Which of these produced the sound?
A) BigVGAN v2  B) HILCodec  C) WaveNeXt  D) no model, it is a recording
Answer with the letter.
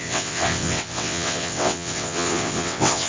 C